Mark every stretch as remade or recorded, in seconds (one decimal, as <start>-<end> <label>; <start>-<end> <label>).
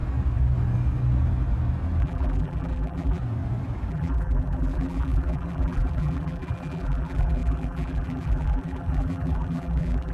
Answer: 0.0-2.0 recorded; 2.0-3.2 remade; 3.2-3.9 recorded; 3.9-10.1 remade